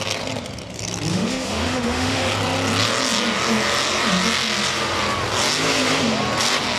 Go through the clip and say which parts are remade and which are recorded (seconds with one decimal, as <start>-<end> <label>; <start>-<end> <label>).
0.0-1.1 recorded; 1.1-2.3 remade; 2.3-6.8 recorded